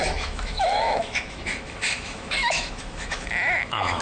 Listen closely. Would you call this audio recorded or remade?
remade